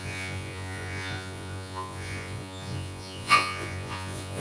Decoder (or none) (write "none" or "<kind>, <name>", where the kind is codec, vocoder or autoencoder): vocoder, Vocos